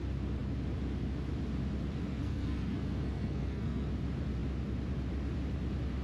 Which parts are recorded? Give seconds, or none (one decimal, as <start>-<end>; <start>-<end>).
0.0-2.1; 3.9-6.0